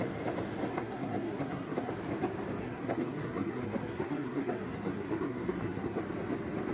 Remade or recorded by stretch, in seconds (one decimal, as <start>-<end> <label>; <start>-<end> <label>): 0.0-0.7 recorded; 0.7-1.9 remade; 1.9-2.6 recorded; 2.6-6.0 remade; 6.0-6.7 recorded